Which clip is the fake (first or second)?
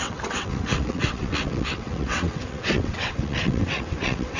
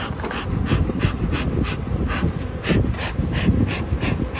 first